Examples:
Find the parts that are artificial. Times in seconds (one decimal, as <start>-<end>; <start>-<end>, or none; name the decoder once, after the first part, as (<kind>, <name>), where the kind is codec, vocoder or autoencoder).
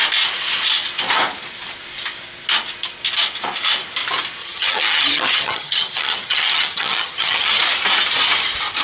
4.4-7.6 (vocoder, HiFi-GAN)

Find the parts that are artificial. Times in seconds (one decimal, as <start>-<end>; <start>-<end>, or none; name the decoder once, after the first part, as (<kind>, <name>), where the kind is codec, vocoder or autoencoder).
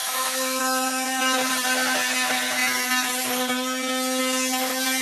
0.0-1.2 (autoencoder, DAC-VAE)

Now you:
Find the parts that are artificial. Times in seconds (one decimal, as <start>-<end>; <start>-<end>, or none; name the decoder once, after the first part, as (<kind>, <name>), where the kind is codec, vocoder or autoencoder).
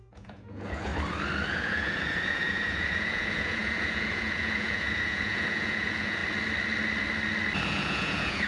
0.0-0.9 (vocoder, Vocos); 1.5-6.2; 7.6-8.5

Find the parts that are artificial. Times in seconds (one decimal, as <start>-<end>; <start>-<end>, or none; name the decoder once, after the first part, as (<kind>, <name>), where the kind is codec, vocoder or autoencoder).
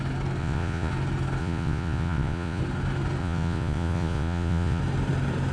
0.4-0.9 (vocoder, Vocos); 1.4-2.6; 3.2-4.8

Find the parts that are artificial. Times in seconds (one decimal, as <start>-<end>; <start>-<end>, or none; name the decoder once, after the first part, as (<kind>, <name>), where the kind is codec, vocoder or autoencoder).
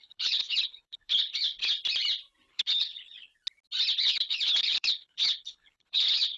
0.0-1.7 (codec, HILCodec); 2.5-3.3; 4.0-6.4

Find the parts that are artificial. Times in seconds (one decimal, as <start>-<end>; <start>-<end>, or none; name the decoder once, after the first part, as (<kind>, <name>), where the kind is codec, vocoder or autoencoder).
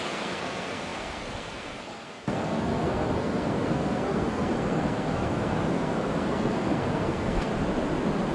0.0-7.5 (codec, SNAC)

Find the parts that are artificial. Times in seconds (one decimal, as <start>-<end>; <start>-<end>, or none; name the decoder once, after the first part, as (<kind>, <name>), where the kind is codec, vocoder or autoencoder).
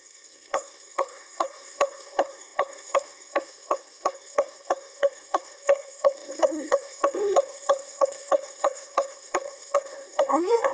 0.0-10.7 (codec, SNAC)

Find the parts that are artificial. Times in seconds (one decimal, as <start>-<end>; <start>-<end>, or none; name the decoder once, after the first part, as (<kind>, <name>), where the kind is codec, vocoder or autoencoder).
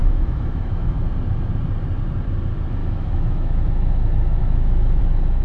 0.0-1.0 (autoencoder, DAC-VAE); 2.8-3.6; 4.4-5.0